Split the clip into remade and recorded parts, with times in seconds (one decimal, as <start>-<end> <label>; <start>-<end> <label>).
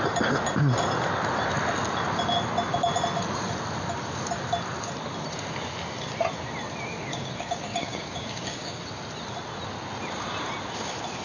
0.0-7.1 recorded; 7.1-8.8 remade; 8.8-11.2 recorded